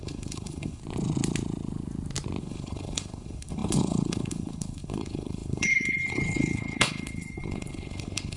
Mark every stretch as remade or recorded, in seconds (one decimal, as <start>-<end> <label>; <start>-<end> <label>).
0.0-0.8 remade; 0.8-2.4 recorded; 2.4-8.4 remade

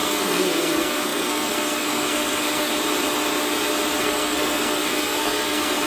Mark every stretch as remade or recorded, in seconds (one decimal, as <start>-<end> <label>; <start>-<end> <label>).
0.0-2.7 remade; 2.7-4.0 recorded; 4.0-5.9 remade

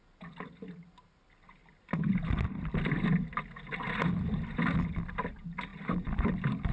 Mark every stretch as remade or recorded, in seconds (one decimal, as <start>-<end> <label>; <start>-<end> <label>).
0.0-6.7 recorded

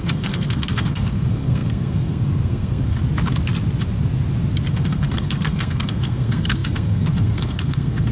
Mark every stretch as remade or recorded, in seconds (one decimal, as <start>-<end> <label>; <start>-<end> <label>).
0.0-3.0 remade; 3.0-4.7 recorded; 4.7-8.1 remade